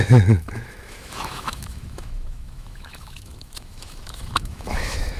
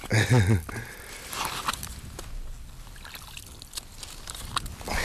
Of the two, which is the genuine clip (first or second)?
second